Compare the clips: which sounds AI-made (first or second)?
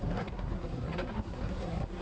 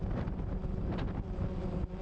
first